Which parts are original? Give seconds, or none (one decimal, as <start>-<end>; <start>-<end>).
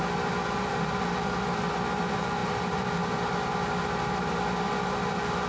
0.0-5.5